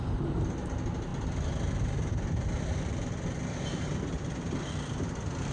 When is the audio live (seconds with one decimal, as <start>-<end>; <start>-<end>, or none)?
0.0-5.5

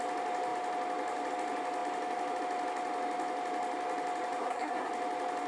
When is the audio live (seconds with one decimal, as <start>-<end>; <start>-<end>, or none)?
0.0-4.4; 4.9-5.5

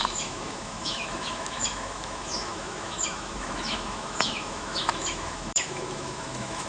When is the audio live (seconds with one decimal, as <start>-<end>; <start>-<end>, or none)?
none

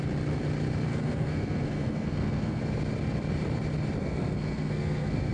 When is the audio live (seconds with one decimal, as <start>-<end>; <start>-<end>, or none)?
0.0-0.9; 2.6-4.0

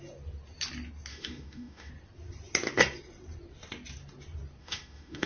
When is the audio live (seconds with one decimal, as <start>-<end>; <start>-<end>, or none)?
0.0-1.1; 1.9-4.6